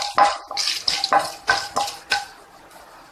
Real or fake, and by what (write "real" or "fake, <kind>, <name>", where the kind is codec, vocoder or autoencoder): real